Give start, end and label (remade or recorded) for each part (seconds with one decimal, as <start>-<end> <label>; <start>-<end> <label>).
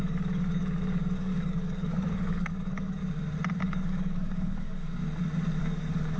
0.0-3.0 remade; 3.0-3.6 recorded; 3.6-5.0 remade; 5.0-5.6 recorded; 5.6-6.2 remade